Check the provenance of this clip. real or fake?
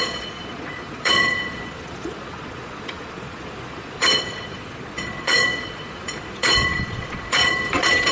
fake